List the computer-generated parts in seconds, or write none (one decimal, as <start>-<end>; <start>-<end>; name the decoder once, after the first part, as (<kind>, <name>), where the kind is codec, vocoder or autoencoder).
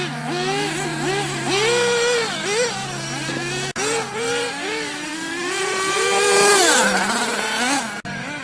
none